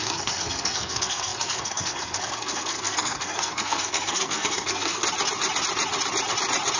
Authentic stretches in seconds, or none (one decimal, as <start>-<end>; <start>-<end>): 5.0-6.8